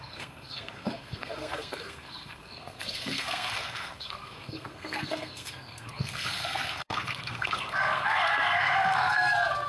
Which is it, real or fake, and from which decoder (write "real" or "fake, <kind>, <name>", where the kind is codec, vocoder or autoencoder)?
fake, codec, SNAC